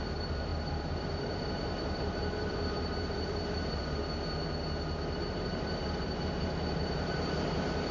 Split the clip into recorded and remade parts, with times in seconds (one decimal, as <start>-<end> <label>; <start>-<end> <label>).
0.0-4.0 remade; 4.0-5.4 recorded; 5.4-7.9 remade